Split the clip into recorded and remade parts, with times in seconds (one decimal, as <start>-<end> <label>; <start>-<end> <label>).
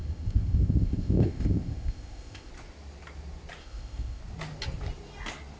0.0-2.5 remade; 2.5-3.6 recorded; 3.6-4.2 remade; 4.2-5.6 recorded